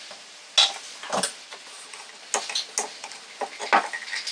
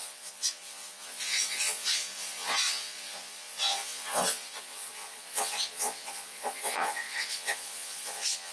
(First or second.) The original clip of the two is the first